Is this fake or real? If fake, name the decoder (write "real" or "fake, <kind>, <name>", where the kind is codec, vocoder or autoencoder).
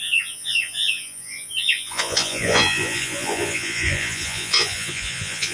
fake, vocoder, Vocos